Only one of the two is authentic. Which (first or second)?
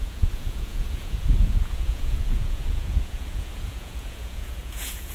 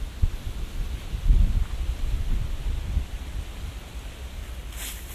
second